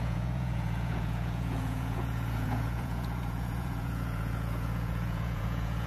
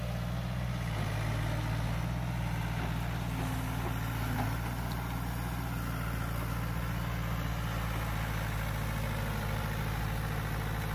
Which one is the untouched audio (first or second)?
second